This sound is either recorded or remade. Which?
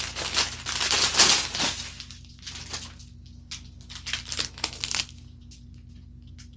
recorded